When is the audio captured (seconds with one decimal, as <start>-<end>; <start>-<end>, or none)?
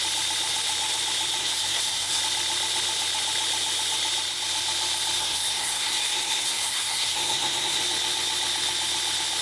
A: 0.0-1.4; 2.2-5.2; 7.8-9.4